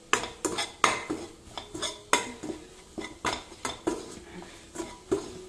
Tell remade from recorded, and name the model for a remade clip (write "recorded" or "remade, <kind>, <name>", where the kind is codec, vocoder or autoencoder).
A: recorded